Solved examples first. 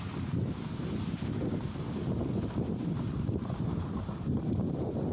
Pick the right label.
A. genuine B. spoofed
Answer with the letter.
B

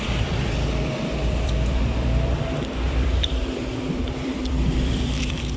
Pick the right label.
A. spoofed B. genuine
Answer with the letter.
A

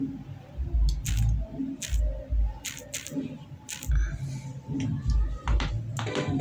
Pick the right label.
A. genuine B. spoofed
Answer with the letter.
A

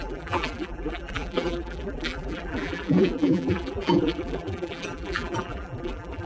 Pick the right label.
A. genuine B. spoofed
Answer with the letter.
B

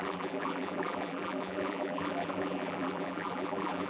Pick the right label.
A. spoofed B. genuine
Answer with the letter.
A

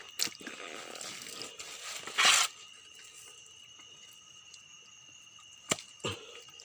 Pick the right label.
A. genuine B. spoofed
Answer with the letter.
A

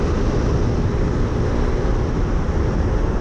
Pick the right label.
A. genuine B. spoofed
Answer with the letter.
A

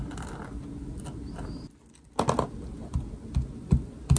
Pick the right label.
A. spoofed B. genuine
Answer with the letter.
B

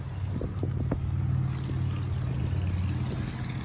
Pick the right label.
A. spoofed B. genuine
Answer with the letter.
B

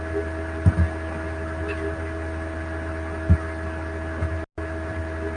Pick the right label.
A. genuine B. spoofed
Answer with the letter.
A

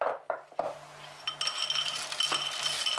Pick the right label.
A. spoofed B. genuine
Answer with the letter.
B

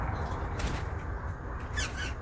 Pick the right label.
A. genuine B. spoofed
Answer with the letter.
A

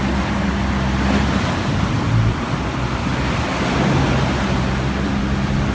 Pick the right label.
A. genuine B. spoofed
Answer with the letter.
A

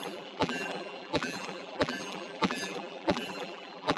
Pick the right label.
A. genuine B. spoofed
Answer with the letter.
B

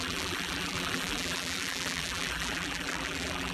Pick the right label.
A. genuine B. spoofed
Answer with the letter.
B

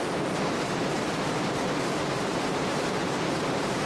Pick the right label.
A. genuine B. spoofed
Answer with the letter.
B